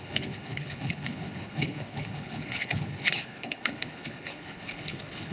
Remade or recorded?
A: remade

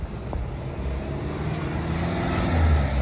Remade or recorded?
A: recorded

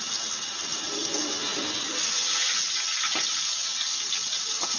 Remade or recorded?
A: recorded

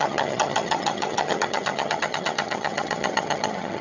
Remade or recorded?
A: remade